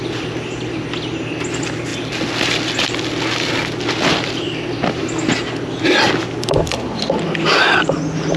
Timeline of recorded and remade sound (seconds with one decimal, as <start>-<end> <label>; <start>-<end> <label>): 0.0-8.4 recorded